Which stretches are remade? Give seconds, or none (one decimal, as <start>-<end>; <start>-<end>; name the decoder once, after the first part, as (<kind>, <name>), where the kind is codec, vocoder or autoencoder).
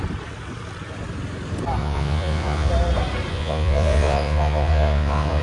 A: 1.8-2.7 (vocoder, Vocos); 3.3-5.4